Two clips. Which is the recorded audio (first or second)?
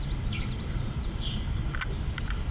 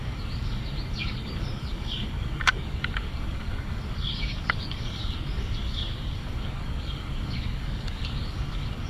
first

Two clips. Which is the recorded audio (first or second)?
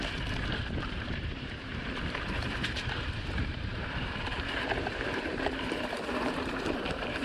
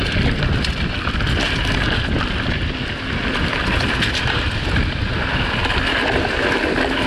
second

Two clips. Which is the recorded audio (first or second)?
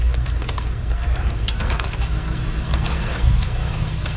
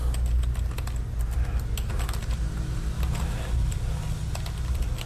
second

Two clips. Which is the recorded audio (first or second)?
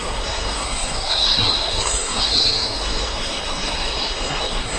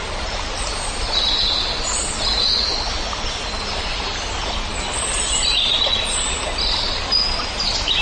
second